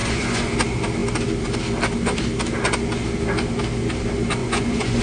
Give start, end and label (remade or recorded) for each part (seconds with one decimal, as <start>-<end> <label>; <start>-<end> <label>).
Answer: 0.0-0.5 remade; 0.5-4.4 recorded; 4.4-5.0 remade